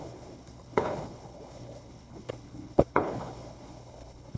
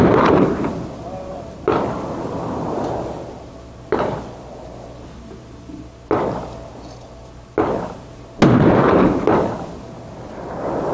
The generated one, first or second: first